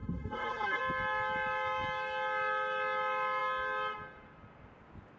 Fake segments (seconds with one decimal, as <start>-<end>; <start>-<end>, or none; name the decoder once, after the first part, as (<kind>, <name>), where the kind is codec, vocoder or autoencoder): 0.0-0.8 (codec, SNAC)

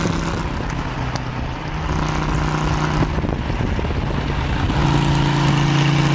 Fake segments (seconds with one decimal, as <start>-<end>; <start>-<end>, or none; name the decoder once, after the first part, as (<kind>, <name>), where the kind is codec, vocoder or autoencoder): none

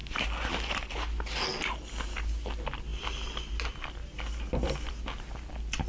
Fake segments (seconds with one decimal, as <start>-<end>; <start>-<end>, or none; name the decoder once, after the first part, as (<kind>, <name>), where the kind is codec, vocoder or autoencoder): none

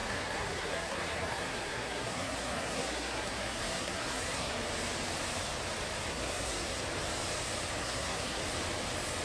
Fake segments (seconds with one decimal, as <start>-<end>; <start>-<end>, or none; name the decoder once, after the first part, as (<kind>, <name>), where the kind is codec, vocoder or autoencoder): 0.0-4.5 (codec, SNAC); 6.1-6.8; 7.8-8.4

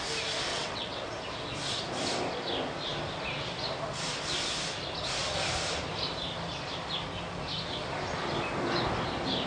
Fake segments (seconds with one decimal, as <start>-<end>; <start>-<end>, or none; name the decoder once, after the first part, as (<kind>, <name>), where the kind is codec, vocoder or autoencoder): 0.5-1.1 (vocoder, WaveNeXt)

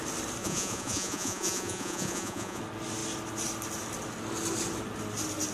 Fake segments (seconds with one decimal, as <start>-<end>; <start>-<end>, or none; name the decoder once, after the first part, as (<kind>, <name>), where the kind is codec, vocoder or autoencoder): 0.4-2.6 (vocoder, Vocos)

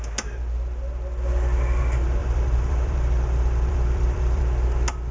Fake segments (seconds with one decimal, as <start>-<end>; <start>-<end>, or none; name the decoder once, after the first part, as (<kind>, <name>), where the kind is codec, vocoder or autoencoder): 2.2-4.4 (vocoder, BigVGAN v2)

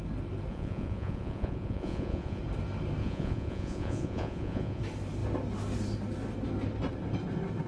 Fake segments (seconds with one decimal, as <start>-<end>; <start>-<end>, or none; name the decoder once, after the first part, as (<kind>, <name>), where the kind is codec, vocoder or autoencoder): 0.5-2.4 (vocoder, Vocos); 3.0-4.8